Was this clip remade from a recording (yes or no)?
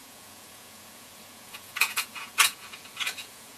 yes